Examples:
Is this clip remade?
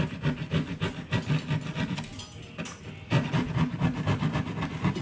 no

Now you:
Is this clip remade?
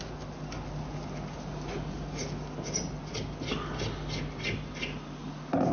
no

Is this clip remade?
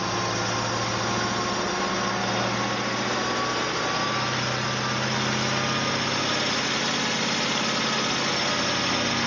no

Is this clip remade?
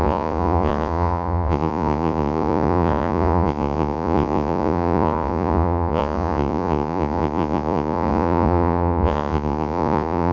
yes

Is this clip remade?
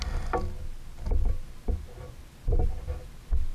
no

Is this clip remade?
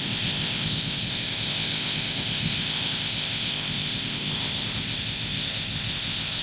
yes